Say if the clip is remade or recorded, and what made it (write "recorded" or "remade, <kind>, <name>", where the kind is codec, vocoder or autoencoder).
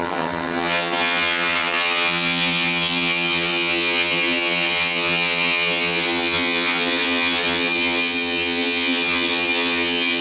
remade, vocoder, HiFi-GAN